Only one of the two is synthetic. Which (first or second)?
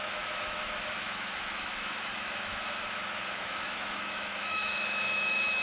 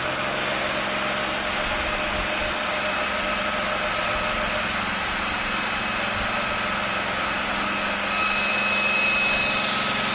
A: first